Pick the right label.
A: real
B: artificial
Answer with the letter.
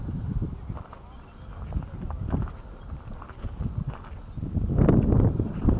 A